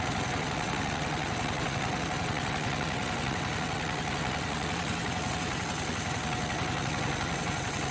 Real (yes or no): no